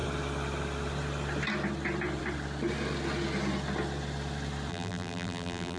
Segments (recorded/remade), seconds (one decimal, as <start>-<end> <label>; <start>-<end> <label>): 0.0-4.7 recorded; 4.7-5.8 remade